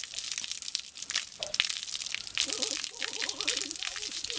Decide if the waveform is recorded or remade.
recorded